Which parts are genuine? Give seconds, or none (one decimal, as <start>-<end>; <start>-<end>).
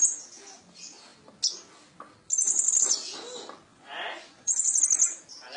0.0-3.7; 4.8-5.6